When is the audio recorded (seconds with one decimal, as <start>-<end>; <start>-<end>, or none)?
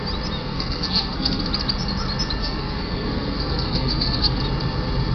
0.0-0.4; 1.4-2.4; 4.4-5.1